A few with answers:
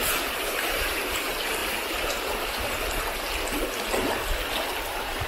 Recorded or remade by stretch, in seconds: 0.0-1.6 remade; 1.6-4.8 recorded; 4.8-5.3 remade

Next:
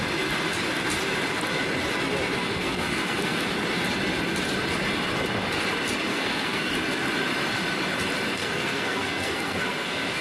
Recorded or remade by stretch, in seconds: 0.0-2.4 recorded; 2.4-3.4 remade; 3.4-6.1 recorded; 6.1-6.7 remade; 6.7-8.3 recorded; 8.3-10.2 remade

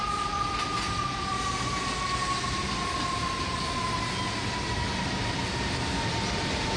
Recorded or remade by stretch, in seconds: 0.0-6.8 recorded

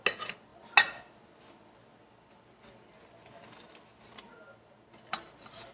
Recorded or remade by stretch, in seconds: 0.0-5.7 recorded

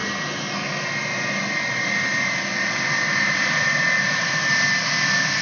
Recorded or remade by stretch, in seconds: 0.0-5.4 recorded

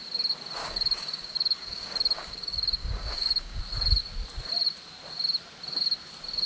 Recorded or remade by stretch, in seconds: 0.0-0.6 recorded; 0.6-3.6 remade; 3.6-6.5 recorded

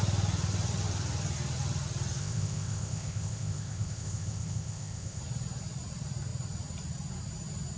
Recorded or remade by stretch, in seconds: 0.0-2.2 recorded; 2.2-5.2 remade; 5.2-7.8 recorded

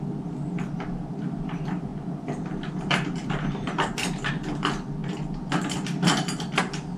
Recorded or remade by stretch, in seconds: 0.0-7.0 recorded